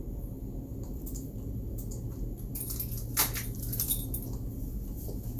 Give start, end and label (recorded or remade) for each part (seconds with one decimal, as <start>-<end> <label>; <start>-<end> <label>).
0.0-5.4 recorded